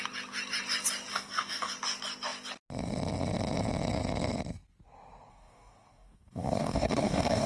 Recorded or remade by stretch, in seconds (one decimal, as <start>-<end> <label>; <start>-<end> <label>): 0.0-1.1 recorded; 1.1-1.7 remade; 1.7-5.3 recorded; 5.3-7.5 remade